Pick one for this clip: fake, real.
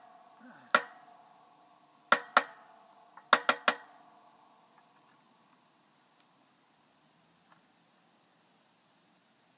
real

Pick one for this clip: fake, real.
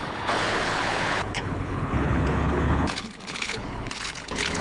fake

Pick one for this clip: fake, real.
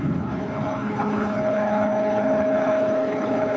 fake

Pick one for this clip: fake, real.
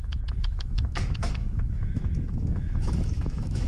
fake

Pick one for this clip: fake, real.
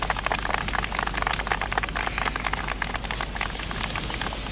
real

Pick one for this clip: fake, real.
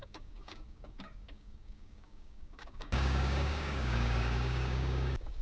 fake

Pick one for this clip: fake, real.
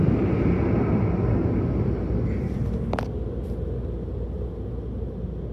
real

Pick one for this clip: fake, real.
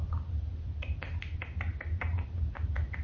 real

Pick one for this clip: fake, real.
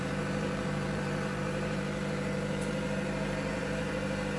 fake